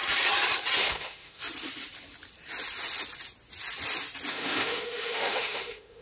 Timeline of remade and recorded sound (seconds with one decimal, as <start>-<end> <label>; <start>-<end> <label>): 0.0-0.8 recorded; 0.8-1.4 remade; 1.4-4.3 recorded; 4.3-6.0 remade